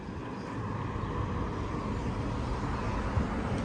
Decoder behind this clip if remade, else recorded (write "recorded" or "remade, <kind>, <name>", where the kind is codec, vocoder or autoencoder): recorded